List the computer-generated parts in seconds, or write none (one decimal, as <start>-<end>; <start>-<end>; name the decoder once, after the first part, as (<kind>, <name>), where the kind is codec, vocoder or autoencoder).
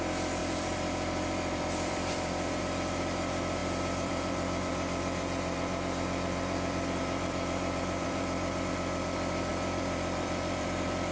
0.4-2.6 (vocoder, BigVGAN v2); 3.6-8.7; 9.5-11.1